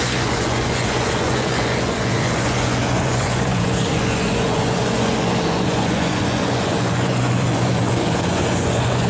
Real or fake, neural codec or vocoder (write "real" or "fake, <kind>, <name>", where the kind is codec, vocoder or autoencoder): fake, vocoder, Vocos